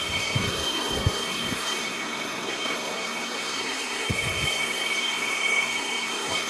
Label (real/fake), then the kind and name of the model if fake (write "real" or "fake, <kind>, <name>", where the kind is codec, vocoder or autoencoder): fake, codec, SNAC